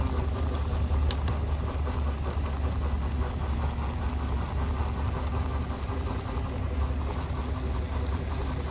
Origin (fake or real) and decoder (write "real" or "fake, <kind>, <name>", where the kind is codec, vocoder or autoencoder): real